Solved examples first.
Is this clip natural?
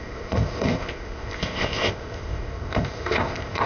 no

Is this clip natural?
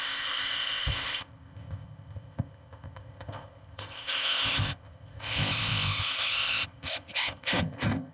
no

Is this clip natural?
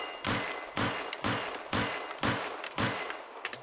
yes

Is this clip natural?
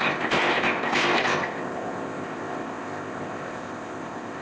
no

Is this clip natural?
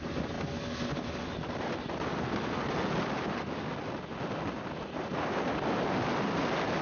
yes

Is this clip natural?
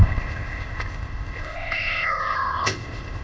no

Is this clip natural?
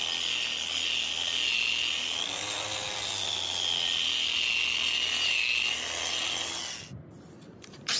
yes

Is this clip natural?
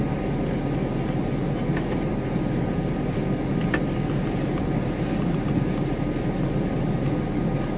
yes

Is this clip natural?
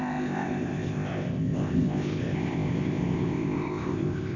no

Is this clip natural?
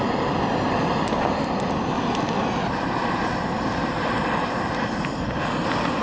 yes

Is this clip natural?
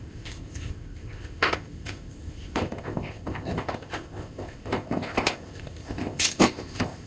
no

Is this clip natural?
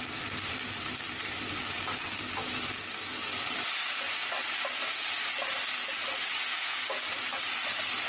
yes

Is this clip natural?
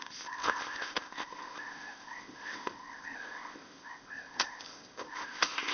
no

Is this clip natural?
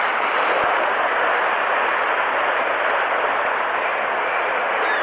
yes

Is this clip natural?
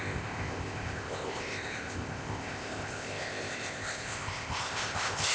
no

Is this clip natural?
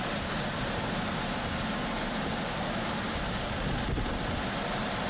yes